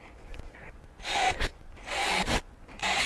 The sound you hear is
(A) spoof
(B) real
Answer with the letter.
A